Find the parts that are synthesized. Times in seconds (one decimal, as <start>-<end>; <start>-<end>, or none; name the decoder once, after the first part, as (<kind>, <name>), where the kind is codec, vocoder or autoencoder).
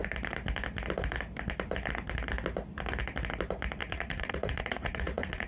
3.8-5.5 (vocoder, Vocos)